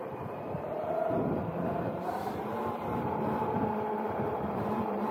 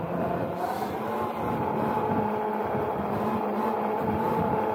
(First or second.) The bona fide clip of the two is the second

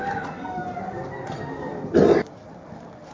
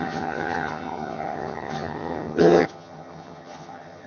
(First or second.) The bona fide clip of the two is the first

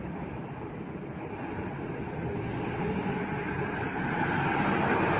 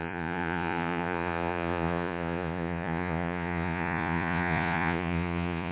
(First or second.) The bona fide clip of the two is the first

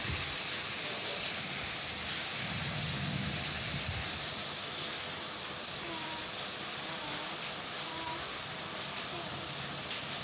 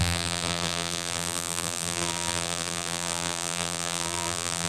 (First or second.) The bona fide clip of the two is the first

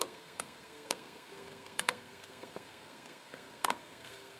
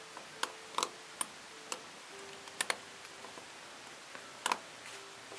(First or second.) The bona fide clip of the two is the second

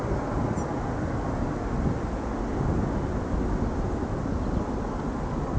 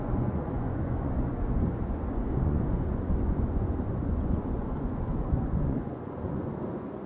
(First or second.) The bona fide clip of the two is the first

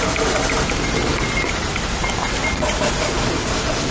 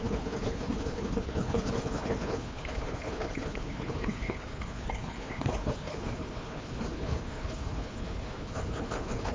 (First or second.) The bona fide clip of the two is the first